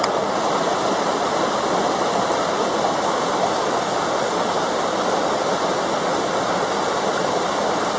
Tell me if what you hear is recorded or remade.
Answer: recorded